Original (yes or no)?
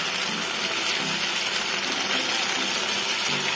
yes